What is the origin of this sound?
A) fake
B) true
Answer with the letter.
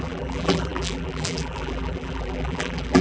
A